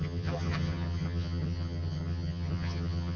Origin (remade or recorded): remade